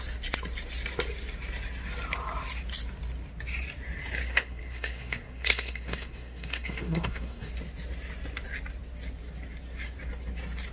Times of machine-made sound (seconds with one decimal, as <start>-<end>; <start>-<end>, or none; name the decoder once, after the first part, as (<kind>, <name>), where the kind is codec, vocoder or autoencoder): 4.2-7.5 (codec, SNAC)